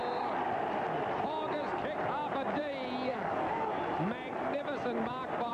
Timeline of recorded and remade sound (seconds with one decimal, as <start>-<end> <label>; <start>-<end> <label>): 0.0-3.1 recorded; 3.1-3.8 remade; 3.8-5.5 recorded